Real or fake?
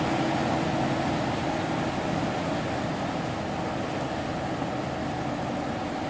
real